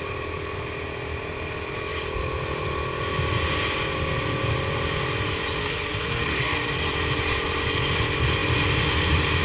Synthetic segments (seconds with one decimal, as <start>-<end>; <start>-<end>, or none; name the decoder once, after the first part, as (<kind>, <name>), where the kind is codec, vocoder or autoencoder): 5.6-6.7 (codec, SNAC)